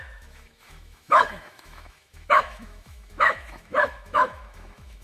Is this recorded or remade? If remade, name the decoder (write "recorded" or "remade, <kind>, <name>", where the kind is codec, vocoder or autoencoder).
remade, autoencoder, DAC-VAE